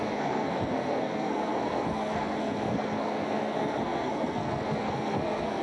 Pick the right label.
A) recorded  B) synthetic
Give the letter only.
B